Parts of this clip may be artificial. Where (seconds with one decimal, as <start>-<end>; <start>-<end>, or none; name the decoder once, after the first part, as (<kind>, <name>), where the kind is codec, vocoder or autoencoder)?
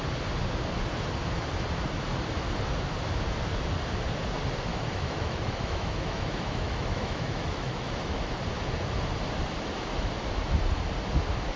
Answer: 4.7-8.2 (autoencoder, DAC-VAE)